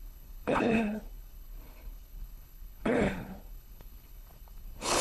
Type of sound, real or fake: fake